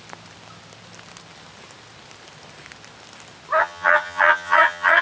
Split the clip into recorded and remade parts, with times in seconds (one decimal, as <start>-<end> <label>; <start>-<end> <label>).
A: 0.0-3.6 recorded; 3.6-5.0 remade